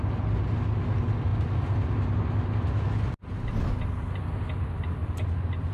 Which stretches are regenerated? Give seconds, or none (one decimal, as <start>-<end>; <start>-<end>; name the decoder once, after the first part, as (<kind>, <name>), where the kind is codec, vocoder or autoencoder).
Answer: none